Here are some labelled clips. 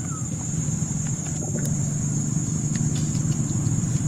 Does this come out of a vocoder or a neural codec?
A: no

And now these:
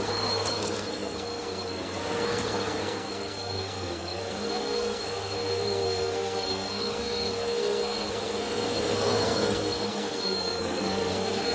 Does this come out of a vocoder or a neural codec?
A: yes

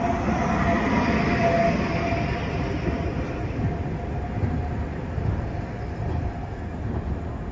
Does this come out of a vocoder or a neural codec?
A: no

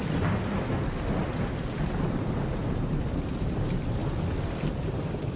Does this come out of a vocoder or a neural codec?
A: no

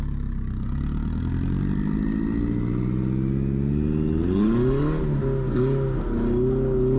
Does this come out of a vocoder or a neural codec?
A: no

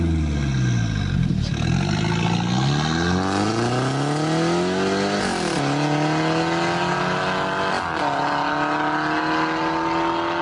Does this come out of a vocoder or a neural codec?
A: no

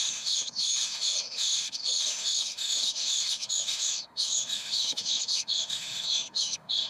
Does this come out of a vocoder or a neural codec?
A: yes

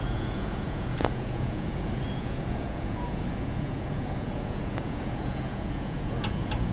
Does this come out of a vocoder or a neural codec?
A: yes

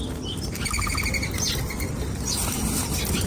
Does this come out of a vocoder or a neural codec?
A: no